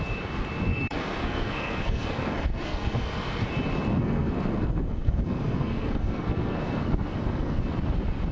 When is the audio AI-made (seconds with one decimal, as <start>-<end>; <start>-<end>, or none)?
0.7-3.4; 3.9-7.6